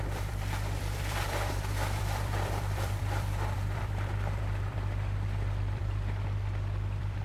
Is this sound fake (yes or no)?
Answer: yes